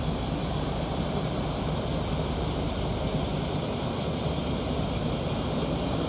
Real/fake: real